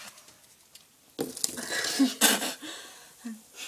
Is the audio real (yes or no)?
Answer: yes